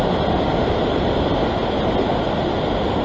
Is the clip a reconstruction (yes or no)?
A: no